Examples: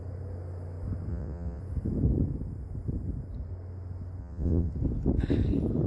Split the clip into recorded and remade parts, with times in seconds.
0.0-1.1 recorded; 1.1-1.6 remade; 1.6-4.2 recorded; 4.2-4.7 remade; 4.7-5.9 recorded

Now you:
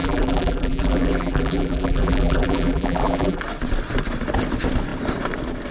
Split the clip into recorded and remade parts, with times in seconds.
0.0-3.4 remade; 3.4-5.7 recorded

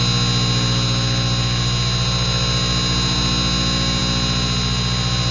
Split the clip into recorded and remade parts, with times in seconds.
0.0-5.3 recorded

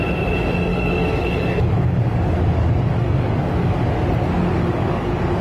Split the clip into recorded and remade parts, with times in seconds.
0.0-0.7 recorded; 0.7-3.9 remade; 3.9-4.6 recorded; 4.6-5.4 remade

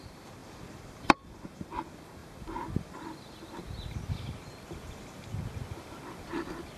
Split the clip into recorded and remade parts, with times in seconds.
0.0-0.4 recorded; 0.4-1.7 remade; 1.7-2.2 recorded; 2.2-3.6 remade; 3.6-6.8 recorded

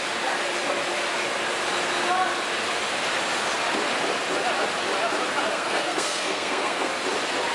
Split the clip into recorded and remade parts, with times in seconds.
0.0-5.5 recorded; 5.5-6.9 remade; 6.9-7.5 recorded

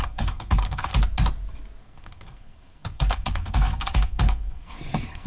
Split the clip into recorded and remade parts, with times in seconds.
0.0-0.9 remade; 0.9-1.8 recorded; 1.8-5.3 remade